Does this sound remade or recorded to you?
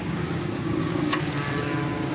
remade